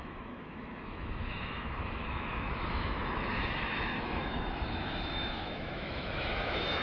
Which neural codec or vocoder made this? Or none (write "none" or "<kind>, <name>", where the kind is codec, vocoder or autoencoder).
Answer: autoencoder, DAC-VAE